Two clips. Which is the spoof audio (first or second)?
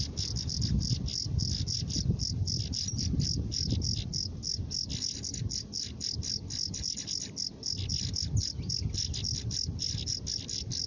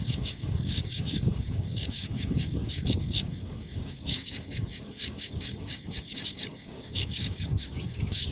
second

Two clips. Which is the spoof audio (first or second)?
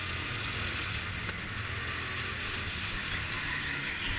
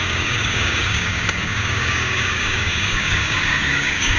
second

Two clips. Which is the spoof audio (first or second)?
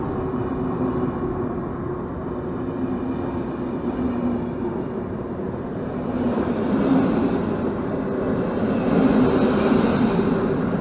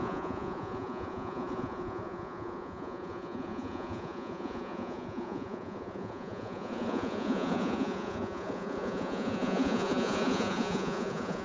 second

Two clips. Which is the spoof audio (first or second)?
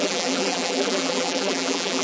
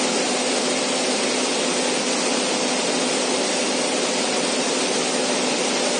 first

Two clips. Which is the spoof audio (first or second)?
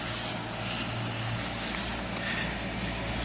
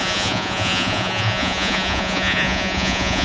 second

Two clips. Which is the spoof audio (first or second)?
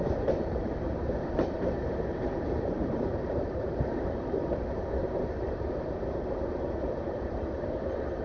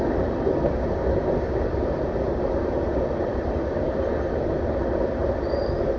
first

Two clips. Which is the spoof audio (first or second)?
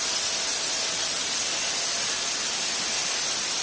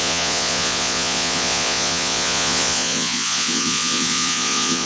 second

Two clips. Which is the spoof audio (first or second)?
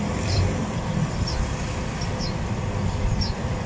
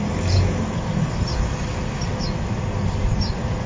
first